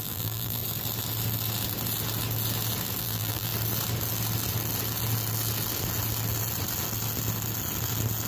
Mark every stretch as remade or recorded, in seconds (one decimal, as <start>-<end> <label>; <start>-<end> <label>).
0.0-0.6 remade; 0.6-3.0 recorded; 3.0-3.5 remade; 3.5-8.3 recorded